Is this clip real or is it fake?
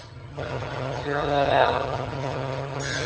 fake